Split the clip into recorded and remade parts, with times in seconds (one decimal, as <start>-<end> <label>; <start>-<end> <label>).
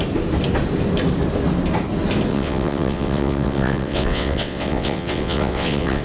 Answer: 0.0-2.3 recorded; 2.3-6.0 remade